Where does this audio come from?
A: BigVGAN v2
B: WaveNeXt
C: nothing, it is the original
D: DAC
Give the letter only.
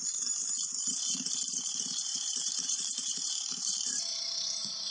A